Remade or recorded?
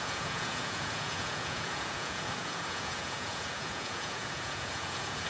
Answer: remade